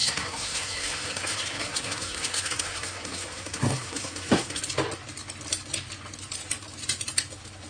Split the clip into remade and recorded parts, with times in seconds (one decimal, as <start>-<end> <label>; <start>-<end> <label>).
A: 0.0-4.6 remade; 4.6-7.7 recorded